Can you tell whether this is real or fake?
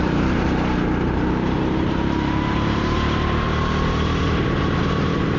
fake